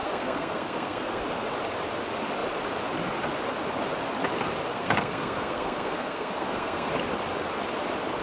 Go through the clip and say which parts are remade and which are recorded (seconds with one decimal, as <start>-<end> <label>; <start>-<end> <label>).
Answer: 0.0-1.2 remade; 1.2-4.7 recorded; 4.7-6.9 remade; 6.9-8.2 recorded

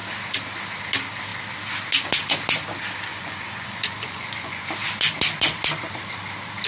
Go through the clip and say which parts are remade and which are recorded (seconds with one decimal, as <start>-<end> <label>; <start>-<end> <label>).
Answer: 0.0-3.1 recorded; 3.1-4.7 remade; 4.7-6.7 recorded

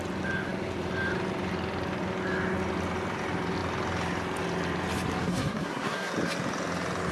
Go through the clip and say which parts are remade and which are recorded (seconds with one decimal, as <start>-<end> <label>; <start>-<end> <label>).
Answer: 0.0-5.3 recorded; 5.3-6.1 remade; 6.1-7.1 recorded

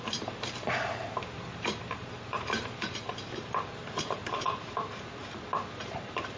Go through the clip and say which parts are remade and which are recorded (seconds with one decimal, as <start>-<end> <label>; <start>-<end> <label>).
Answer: 0.0-1.5 remade; 1.5-3.6 recorded; 3.6-5.2 remade; 5.2-5.8 recorded; 5.8-6.4 remade